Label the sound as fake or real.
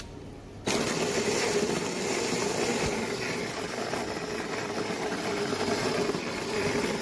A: real